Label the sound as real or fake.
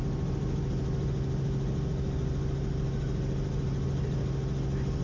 real